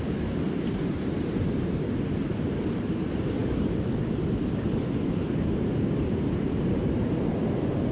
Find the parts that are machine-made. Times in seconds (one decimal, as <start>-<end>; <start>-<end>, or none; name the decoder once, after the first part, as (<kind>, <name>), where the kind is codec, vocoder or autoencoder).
0.0-3.4 (vocoder, BigVGAN v2); 5.1-7.9